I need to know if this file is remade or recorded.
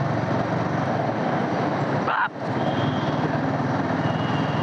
recorded